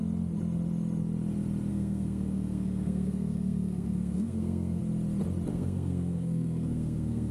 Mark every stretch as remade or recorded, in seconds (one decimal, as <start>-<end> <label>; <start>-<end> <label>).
0.0-1.7 recorded; 1.7-4.8 remade; 4.8-5.5 recorded; 5.5-7.3 remade